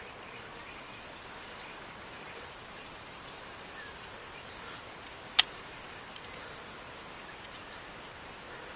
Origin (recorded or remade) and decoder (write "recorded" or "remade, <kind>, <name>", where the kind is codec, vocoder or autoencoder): recorded